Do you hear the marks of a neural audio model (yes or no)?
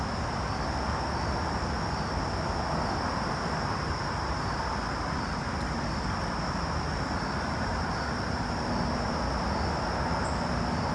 no